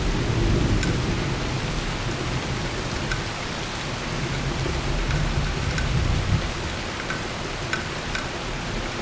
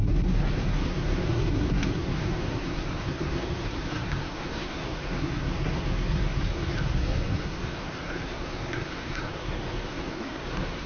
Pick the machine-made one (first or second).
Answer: second